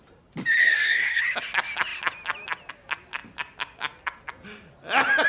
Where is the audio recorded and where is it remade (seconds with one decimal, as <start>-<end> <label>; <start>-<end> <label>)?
0.0-0.6 recorded; 0.6-1.2 remade; 1.2-5.3 recorded